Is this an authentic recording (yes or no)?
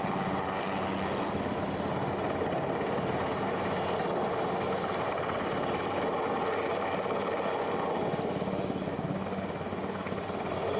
yes